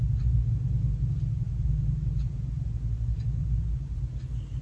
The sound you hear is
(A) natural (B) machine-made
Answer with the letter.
A